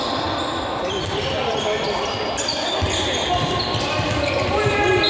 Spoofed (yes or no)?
no